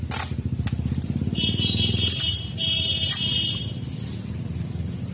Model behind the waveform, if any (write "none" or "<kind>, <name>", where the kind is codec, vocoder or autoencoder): none